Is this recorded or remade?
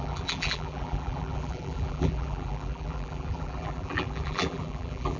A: remade